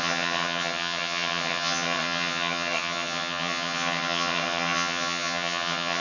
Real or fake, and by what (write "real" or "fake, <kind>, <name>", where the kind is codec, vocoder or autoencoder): fake, vocoder, HiFi-GAN